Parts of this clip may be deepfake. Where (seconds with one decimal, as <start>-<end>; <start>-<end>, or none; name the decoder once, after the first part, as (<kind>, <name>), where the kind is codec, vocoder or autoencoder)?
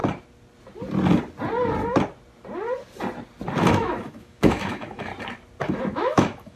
3.7-5.1 (autoencoder, DAC-VAE); 5.6-6.6